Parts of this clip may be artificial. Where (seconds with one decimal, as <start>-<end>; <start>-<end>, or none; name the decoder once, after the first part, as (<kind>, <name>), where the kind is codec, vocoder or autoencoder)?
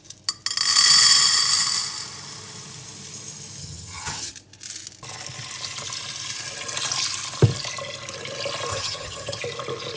3.6-4.3 (vocoder, HiFi-GAN); 8.7-9.4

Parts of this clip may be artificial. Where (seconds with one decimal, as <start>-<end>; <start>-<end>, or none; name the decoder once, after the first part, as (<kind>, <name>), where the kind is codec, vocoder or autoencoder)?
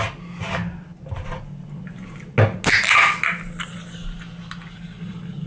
none